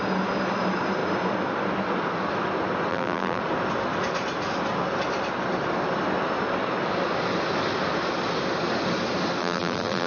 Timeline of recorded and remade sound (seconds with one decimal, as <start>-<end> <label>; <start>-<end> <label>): 0.0-2.9 recorded; 2.9-3.4 remade; 3.4-9.4 recorded; 9.4-10.1 remade